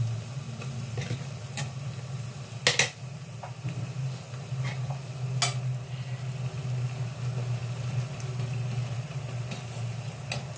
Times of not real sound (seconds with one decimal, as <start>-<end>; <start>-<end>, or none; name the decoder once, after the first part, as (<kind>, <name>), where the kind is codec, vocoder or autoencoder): none